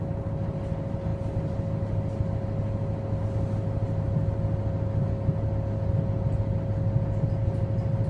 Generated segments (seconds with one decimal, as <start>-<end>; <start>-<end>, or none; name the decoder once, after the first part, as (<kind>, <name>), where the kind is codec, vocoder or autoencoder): none